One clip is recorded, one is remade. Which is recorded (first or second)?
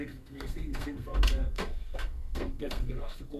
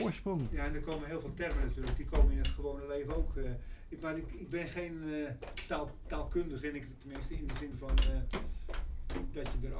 second